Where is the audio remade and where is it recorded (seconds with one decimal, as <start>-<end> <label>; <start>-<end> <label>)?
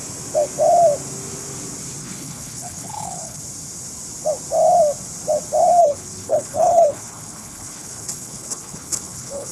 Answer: 0.0-2.0 recorded; 2.0-3.4 remade; 3.4-5.8 recorded; 5.8-9.5 remade